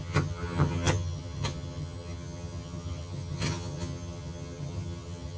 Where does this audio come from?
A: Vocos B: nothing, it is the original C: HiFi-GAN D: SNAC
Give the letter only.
C